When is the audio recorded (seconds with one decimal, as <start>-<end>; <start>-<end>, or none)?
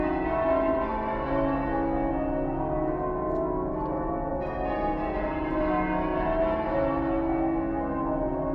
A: 0.0-8.5